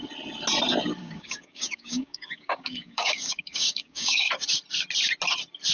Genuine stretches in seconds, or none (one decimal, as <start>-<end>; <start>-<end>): 0.0-1.0; 4.3-5.7